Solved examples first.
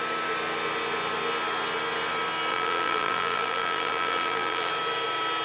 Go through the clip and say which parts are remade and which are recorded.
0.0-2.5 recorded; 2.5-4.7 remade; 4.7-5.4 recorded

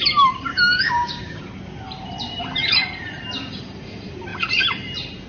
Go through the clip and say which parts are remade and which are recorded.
0.0-0.5 recorded; 0.5-1.4 remade; 1.4-5.3 recorded